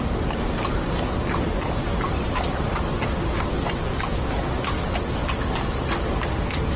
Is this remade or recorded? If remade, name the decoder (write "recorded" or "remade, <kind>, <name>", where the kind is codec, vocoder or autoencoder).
recorded